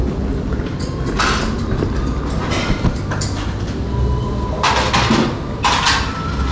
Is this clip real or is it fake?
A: real